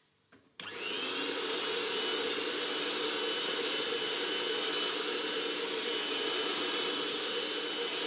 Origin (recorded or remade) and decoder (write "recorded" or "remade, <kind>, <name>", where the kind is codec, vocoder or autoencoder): recorded